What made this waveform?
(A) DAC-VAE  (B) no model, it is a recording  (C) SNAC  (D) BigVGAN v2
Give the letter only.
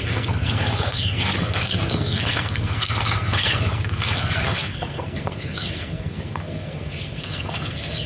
C